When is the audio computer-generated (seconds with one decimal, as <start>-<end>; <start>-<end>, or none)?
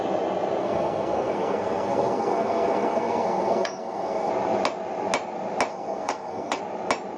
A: 0.6-4.3; 5.7-6.6